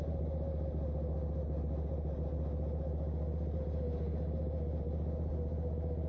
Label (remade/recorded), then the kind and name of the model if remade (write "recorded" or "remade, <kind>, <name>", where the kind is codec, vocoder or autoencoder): recorded